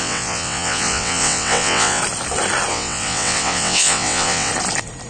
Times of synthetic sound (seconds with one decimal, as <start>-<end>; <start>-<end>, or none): 0.0-2.0; 2.7-4.5